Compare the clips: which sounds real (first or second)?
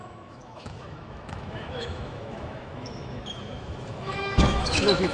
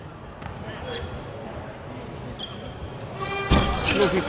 second